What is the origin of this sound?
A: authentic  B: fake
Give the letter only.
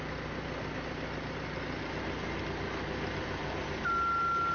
A